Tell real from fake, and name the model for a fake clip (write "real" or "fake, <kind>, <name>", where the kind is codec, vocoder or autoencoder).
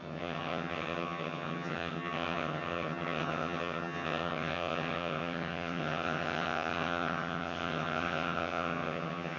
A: fake, vocoder, HiFi-GAN